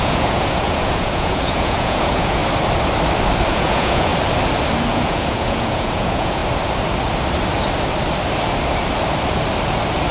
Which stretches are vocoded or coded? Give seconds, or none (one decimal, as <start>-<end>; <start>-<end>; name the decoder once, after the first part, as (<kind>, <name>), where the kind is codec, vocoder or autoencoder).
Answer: 0.0-2.4 (vocoder, Vocos); 3.5-4.1; 4.9-6.4